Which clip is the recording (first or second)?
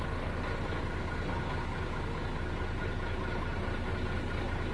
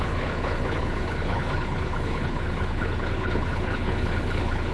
first